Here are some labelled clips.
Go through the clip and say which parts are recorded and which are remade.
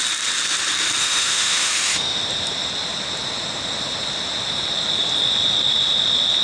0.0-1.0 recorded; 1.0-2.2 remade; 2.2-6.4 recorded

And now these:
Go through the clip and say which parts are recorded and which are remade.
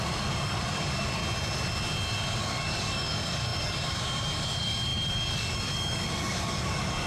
0.0-1.2 remade; 1.2-2.4 recorded; 2.4-7.1 remade